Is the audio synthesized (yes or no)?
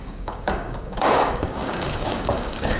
yes